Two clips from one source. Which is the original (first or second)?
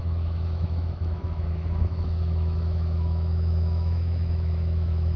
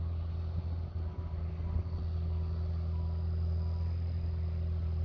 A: second